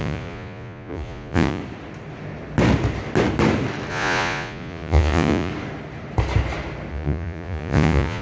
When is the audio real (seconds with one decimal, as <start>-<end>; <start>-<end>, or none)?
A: 1.6-3.9; 5.5-6.9